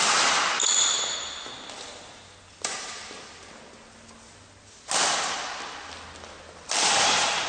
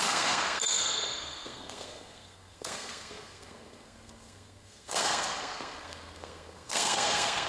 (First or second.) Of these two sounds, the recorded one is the first